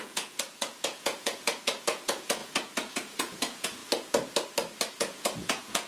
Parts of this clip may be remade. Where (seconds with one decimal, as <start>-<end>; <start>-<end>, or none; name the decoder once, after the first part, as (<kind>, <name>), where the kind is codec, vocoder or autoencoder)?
0.0-3.8 (vocoder, Vocos); 4.9-5.9